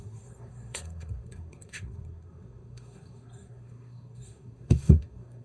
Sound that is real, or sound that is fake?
fake